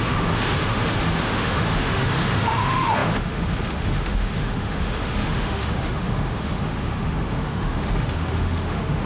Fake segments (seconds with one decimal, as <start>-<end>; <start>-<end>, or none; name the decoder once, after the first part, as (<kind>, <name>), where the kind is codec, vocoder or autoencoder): 0.0-9.1 (autoencoder, DAC-VAE)